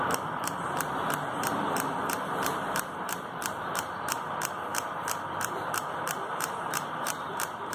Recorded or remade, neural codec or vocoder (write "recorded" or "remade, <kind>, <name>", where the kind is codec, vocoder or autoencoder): remade, vocoder, BigVGAN v2